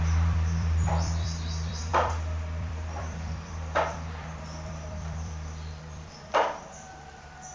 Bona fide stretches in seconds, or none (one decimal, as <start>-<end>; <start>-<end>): none